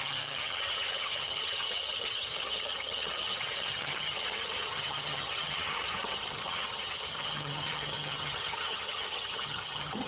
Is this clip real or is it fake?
fake